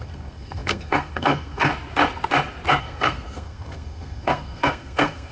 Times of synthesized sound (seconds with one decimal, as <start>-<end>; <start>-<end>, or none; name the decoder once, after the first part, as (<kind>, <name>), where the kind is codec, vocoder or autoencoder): 0.0-1.7 (codec, SNAC); 2.8-5.3